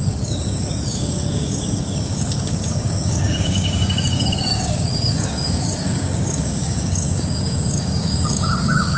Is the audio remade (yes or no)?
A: yes